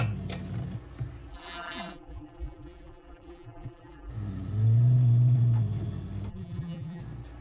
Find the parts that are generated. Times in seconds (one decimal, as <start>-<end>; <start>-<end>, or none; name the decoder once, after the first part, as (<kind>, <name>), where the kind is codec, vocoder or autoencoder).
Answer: 1.3-4.1 (vocoder, BigVGAN v2); 6.3-7.0